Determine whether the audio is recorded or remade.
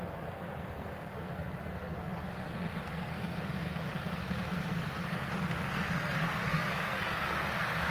remade